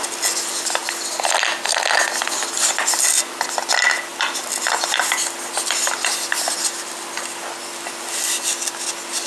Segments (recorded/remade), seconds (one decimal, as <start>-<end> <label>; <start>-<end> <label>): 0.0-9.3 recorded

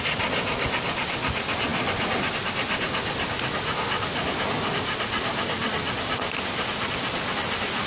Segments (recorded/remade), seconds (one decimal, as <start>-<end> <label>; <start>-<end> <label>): 0.0-7.9 recorded

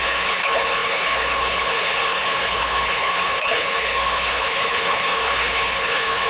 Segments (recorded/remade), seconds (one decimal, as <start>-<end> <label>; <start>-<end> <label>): 0.0-6.3 remade

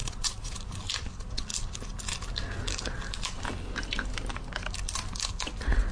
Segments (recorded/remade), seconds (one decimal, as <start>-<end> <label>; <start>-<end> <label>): 0.0-0.6 remade; 0.6-5.9 recorded

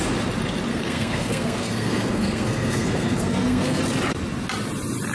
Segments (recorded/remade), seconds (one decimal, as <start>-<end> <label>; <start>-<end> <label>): 0.0-0.7 recorded; 0.7-3.8 remade; 3.8-5.1 recorded

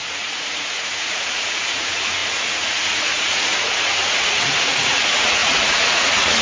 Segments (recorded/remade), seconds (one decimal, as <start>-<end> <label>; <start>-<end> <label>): 0.0-6.4 remade